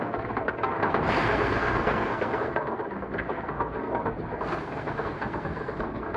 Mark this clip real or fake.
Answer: fake